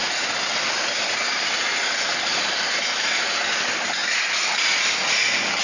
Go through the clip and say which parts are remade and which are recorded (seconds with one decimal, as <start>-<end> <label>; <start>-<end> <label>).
0.0-5.6 recorded